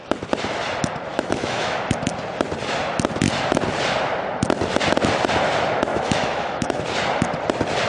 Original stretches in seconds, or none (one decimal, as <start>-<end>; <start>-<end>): 0.0-1.1; 1.8-5.9; 6.8-7.9